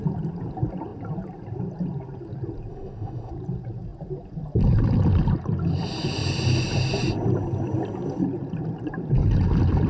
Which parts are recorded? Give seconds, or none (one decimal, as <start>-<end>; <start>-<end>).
0.0-2.7; 3.3-9.9